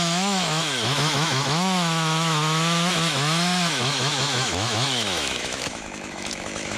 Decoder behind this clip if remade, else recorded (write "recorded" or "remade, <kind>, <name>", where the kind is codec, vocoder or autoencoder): remade, autoencoder, DAC-VAE